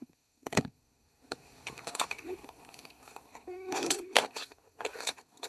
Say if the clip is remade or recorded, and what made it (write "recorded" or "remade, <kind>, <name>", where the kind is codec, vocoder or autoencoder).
remade, codec, SNAC